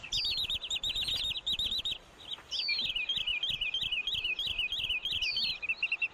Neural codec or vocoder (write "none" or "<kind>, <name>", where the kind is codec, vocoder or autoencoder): none